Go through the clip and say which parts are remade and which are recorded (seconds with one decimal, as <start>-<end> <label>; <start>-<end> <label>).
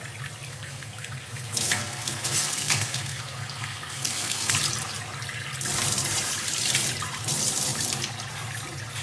0.0-0.5 recorded; 0.5-4.5 remade; 4.5-9.0 recorded